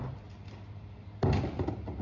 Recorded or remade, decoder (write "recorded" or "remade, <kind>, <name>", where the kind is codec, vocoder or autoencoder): recorded